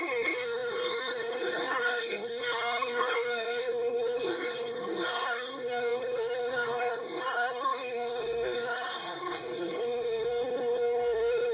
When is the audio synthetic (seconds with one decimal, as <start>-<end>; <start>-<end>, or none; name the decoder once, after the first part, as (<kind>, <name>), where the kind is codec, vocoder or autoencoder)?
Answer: 0.0-11.5 (codec, SNAC)

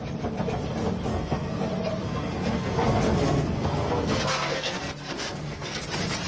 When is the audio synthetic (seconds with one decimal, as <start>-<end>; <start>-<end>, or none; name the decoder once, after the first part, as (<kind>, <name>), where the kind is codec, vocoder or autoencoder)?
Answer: 1.1-1.6 (codec, SNAC); 2.0-5.8